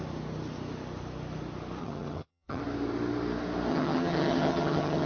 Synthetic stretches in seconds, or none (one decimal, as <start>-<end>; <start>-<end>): 1.8-2.6; 3.7-5.1